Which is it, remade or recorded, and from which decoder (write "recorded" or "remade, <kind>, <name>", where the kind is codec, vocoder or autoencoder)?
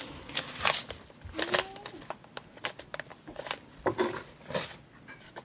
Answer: remade, vocoder, BigVGAN v2